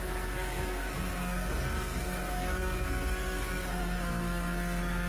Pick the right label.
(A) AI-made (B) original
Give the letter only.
A